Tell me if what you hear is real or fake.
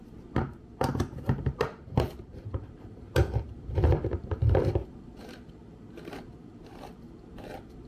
fake